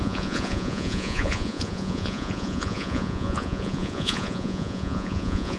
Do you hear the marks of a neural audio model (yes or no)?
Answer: yes